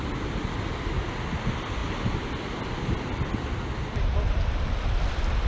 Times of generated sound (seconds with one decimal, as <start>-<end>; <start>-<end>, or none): none